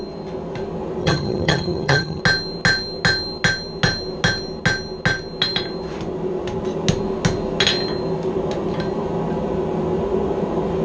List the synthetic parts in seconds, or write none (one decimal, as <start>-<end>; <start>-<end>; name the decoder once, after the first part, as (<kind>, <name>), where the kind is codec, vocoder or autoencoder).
1.0-2.2 (vocoder, HiFi-GAN)